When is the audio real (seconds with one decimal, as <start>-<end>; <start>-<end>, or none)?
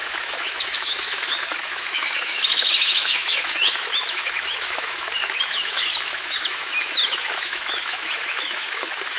none